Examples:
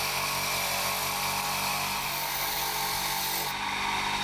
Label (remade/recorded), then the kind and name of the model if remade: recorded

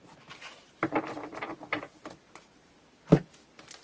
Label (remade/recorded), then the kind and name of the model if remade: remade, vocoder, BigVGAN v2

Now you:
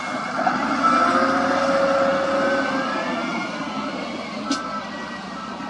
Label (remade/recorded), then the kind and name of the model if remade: recorded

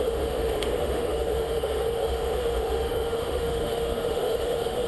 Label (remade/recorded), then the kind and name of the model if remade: remade, autoencoder, DAC-VAE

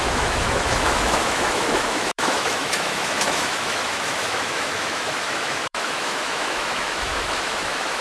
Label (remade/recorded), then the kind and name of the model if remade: remade, autoencoder, DAC-VAE